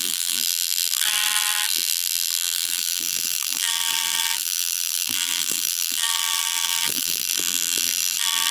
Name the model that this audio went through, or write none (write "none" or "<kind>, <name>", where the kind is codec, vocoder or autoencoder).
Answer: vocoder, BigVGAN v2